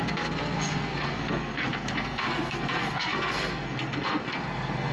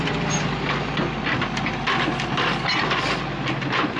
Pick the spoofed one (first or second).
first